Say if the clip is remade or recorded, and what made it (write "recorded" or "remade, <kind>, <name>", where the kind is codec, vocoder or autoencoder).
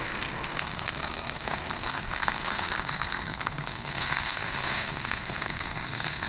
remade, codec, SNAC